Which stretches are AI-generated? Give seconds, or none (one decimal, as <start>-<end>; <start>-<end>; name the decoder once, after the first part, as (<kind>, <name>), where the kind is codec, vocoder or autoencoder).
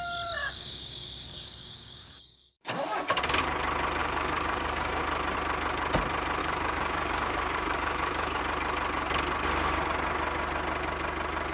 0.4-3.4 (codec, DAC); 4.0-5.0; 6.4-8.4